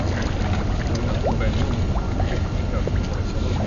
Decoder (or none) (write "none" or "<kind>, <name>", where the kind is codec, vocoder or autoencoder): none